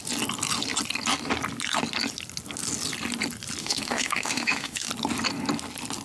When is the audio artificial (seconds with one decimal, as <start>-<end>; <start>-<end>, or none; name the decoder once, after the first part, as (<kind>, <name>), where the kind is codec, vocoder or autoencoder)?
3.6-4.9 (autoencoder, DAC-VAE)